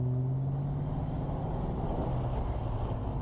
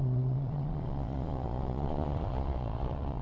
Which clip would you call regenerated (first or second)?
second